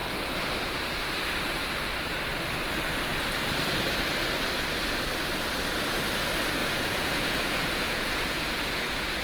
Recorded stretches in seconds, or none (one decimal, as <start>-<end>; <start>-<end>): 0.0-6.6